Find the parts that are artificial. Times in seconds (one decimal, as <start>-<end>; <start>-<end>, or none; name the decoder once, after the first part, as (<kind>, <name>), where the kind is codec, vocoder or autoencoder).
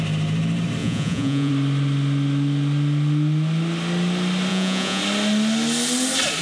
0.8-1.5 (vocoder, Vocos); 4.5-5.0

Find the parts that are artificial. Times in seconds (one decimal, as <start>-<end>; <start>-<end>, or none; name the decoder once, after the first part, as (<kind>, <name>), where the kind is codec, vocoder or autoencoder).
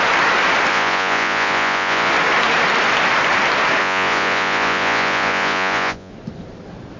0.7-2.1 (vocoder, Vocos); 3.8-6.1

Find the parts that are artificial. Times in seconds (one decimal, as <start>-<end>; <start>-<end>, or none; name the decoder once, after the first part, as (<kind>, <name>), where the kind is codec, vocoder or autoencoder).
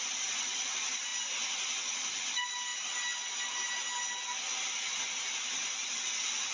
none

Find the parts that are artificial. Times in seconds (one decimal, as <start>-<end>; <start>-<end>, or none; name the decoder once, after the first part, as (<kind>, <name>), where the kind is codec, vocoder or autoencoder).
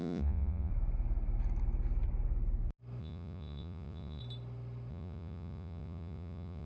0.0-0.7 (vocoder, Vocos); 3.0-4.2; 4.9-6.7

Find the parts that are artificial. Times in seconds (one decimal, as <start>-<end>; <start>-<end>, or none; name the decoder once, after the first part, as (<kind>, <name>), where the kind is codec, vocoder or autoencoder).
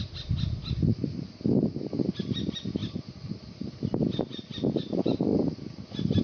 none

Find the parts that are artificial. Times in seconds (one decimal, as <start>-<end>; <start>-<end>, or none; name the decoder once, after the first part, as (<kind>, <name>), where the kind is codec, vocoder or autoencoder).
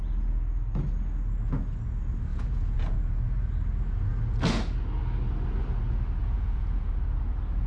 2.3-3.5 (vocoder, Vocos); 6.2-6.9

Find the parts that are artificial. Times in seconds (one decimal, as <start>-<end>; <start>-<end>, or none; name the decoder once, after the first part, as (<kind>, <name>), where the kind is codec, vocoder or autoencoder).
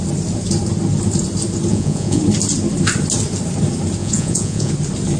1.7-2.2 (vocoder, Vocos); 4.0-4.7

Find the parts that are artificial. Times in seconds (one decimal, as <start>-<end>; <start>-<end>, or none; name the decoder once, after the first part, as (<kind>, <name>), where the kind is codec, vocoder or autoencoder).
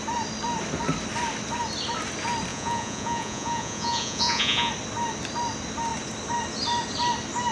2.5-4.7 (vocoder, Vocos)